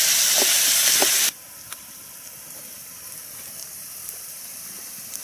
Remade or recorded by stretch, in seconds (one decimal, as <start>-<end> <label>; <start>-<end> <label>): 0.0-3.6 recorded; 3.6-5.2 remade